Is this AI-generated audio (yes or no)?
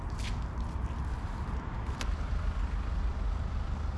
no